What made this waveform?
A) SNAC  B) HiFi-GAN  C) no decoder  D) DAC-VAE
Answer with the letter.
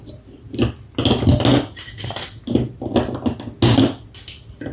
C